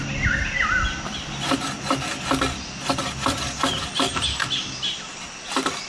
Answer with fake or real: real